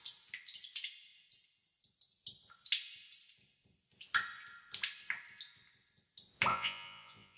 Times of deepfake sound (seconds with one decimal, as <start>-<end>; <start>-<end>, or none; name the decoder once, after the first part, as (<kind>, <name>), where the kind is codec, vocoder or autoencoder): 6.5-7.4 (vocoder, Vocos)